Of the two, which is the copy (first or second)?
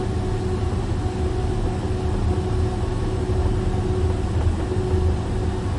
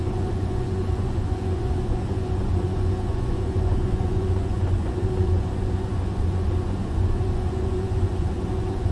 second